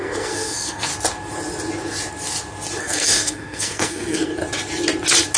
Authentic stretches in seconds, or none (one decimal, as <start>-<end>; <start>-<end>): 0.9-2.8; 4.3-5.4